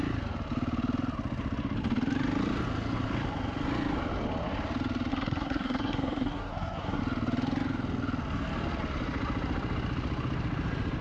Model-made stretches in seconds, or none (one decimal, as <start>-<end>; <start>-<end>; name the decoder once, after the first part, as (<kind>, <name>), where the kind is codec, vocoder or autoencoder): 5.1-7.0 (codec, SNAC)